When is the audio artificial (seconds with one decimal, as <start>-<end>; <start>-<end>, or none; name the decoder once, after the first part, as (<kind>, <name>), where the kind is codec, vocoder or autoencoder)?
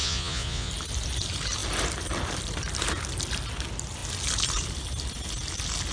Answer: 0.0-0.7 (vocoder, Vocos)